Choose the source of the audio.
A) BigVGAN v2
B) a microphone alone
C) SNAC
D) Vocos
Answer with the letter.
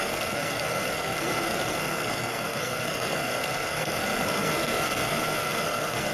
C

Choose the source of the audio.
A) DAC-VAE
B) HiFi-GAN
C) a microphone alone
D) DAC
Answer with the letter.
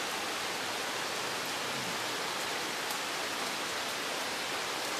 C